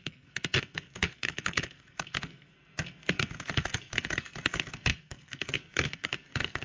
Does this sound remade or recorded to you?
remade